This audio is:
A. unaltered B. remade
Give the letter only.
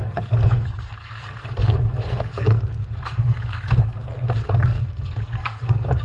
B